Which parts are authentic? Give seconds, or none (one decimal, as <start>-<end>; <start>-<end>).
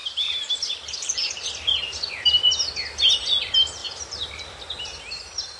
1.5-3.8; 4.4-5.6